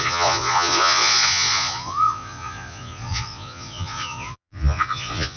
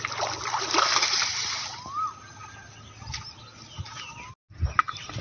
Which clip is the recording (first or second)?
second